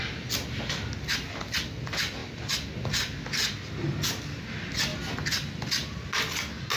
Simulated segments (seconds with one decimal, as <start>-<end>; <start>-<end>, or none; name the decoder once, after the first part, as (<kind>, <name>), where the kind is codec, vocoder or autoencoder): none